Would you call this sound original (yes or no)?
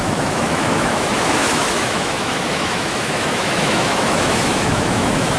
no